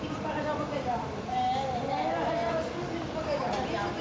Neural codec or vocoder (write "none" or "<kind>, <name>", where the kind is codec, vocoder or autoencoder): vocoder, BigVGAN v2